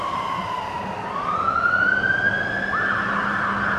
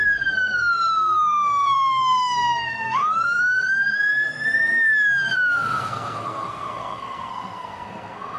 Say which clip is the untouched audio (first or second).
first